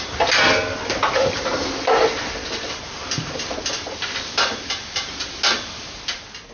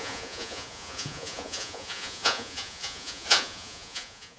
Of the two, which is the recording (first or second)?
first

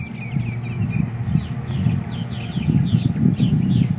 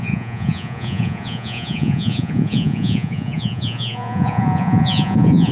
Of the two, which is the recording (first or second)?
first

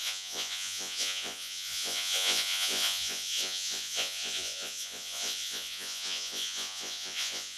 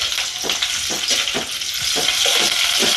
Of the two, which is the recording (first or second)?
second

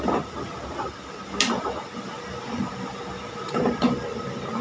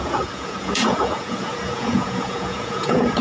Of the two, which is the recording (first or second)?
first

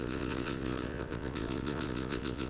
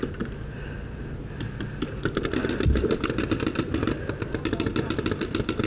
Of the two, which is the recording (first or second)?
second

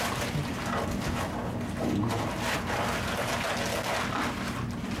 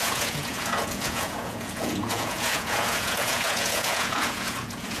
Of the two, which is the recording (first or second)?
first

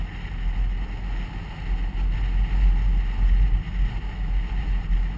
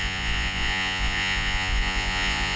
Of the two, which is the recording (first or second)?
first